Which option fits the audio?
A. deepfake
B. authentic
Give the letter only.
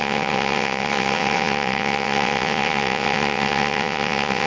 A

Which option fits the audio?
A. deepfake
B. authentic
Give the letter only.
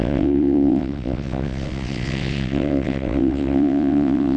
A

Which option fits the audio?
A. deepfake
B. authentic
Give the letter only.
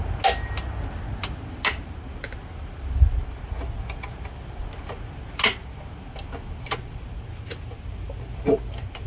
B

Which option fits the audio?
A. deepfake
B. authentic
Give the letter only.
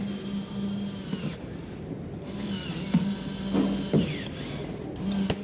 B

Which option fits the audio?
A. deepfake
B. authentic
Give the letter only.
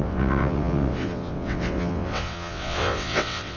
A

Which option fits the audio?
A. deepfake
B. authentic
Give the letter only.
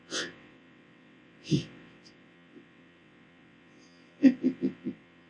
A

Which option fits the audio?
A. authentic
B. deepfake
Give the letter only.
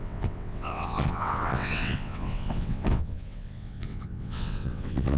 B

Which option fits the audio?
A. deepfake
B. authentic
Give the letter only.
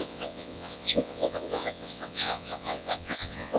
A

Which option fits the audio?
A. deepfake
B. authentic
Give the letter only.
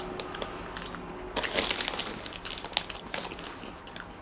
B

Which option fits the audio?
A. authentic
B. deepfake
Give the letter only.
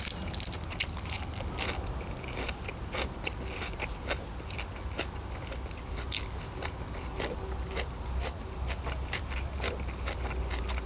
A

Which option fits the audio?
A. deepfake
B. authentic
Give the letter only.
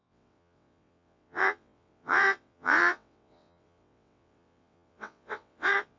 A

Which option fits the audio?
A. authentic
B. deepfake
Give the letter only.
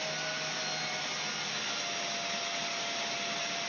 A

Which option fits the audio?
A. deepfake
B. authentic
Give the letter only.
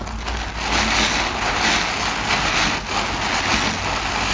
B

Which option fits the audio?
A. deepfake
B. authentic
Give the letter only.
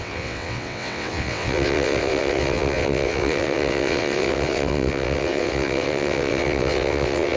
A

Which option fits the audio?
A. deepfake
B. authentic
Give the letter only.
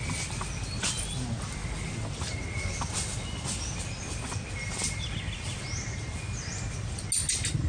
B